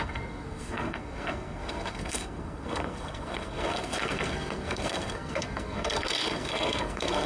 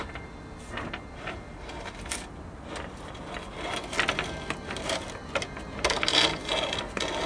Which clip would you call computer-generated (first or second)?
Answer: first